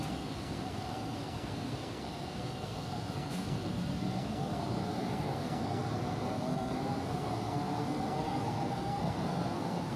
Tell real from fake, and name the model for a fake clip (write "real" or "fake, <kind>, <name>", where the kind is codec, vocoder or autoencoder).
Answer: fake, codec, SNAC